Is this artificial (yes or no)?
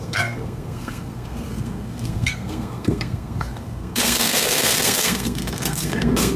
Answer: yes